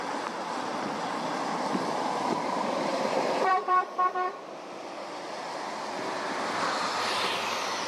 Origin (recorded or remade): remade